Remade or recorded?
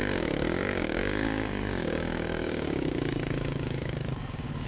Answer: remade